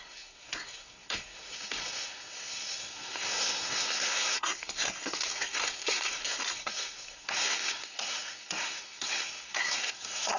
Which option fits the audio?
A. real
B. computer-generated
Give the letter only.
B